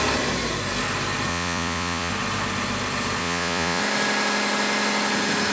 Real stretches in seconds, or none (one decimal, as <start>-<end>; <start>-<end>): 0.0-1.3; 2.1-3.2; 3.8-5.5